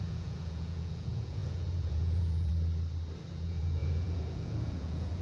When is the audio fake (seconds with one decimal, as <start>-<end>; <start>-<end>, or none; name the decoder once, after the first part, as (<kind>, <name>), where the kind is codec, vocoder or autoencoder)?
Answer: 0.0-2.5 (vocoder, Vocos); 3.3-5.2

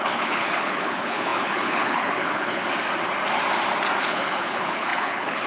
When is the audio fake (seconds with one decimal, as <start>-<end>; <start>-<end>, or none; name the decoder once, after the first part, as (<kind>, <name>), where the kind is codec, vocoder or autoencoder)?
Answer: 0.0-2.6 (codec, HILCodec); 4.0-5.5

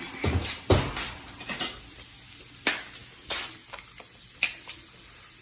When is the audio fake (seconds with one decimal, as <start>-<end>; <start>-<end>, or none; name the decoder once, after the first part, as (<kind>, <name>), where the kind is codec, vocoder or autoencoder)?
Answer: none